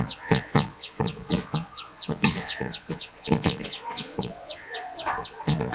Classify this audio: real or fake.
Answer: fake